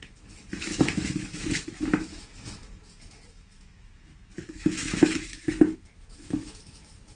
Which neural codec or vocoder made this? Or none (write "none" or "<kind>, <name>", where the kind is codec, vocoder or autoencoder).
autoencoder, DAC-VAE